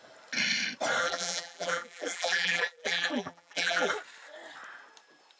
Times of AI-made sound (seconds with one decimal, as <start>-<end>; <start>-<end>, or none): 1.0-3.9